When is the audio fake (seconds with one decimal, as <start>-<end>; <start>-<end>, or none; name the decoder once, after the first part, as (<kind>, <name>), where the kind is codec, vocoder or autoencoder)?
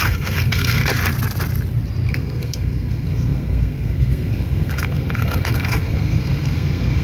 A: 0.0-0.8 (codec, SNAC); 2.1-7.0